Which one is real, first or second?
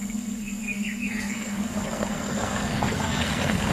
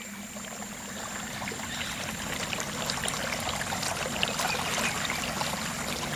second